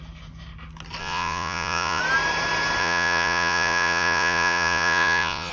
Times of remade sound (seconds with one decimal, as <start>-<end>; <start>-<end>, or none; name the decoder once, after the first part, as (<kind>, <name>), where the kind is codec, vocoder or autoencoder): 1.0-2.0 (vocoder, Vocos); 2.8-5.5